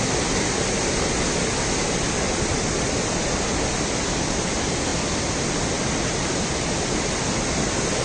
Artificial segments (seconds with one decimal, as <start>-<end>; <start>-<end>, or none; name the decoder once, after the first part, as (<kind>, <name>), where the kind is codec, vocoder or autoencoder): none